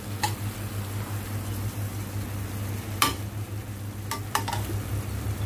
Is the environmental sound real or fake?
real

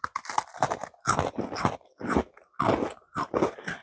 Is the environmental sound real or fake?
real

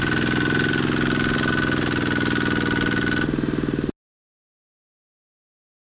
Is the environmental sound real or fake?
real